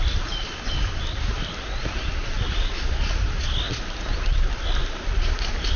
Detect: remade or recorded recorded